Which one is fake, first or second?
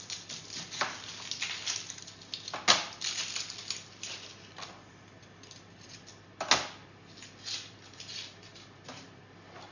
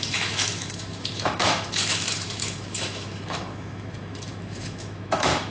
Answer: second